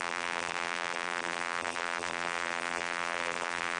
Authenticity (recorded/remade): remade